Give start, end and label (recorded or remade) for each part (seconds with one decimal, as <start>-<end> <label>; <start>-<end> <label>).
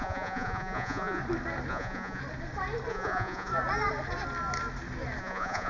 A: 0.0-1.2 remade; 1.2-1.7 recorded; 1.7-2.2 remade; 2.2-2.9 recorded; 2.9-3.5 remade; 3.5-5.2 recorded; 5.2-5.7 remade